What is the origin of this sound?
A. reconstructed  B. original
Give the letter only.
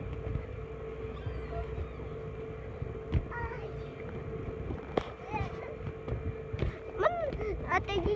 B